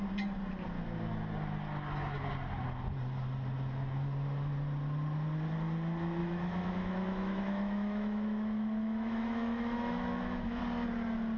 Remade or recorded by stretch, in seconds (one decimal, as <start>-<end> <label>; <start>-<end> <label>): 0.0-6.2 recorded; 6.2-10.6 remade; 10.6-11.4 recorded